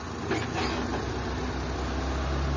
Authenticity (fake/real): real